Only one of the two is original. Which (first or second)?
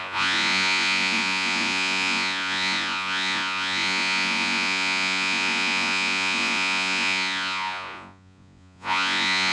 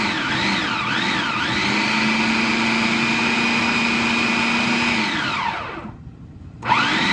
second